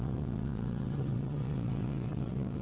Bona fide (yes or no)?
no